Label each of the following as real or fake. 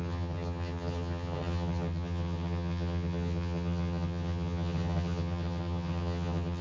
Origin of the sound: fake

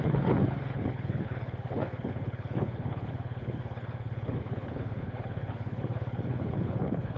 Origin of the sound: fake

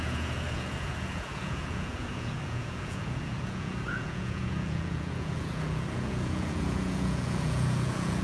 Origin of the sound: fake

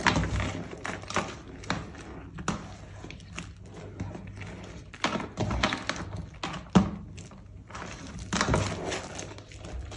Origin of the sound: real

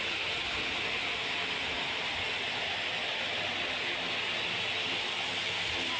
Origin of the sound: real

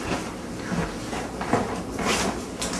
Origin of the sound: real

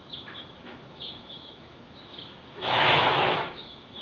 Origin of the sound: fake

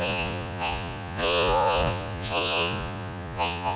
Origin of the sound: fake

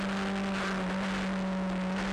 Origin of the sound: real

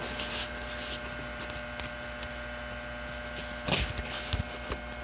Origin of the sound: real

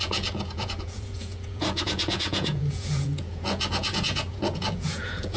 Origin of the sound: fake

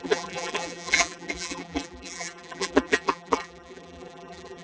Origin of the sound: fake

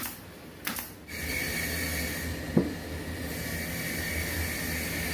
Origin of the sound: real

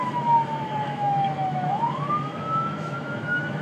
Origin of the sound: fake